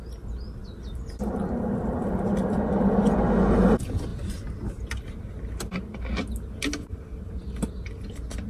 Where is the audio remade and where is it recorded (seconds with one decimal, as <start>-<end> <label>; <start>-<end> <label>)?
0.0-0.6 recorded; 0.6-3.0 remade; 3.0-4.1 recorded; 4.1-4.7 remade; 4.7-8.5 recorded